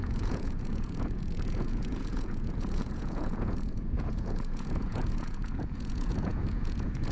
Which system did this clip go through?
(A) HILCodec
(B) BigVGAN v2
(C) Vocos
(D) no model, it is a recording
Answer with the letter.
C